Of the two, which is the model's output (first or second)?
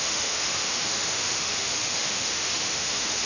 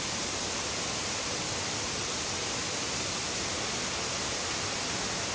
first